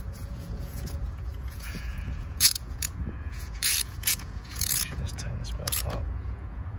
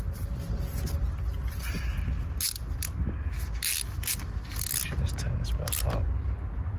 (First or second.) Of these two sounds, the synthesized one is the first